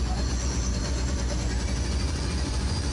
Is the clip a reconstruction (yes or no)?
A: yes